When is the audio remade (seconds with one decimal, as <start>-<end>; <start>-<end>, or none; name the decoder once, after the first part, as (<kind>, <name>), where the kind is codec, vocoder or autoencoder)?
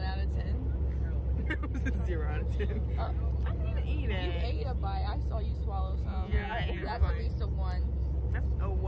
6.1-7.1 (vocoder, Vocos)